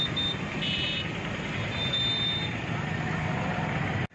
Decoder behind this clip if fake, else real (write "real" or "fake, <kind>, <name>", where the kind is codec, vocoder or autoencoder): real